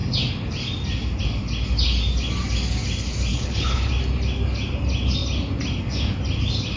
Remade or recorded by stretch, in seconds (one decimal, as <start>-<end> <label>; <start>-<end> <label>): 0.0-3.3 recorded; 3.3-3.9 remade; 3.9-6.8 recorded